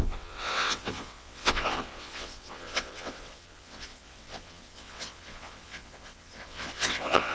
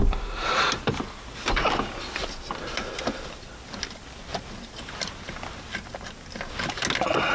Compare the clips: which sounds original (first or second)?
second